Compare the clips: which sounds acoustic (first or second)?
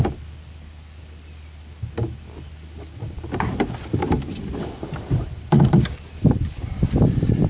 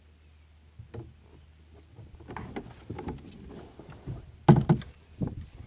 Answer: second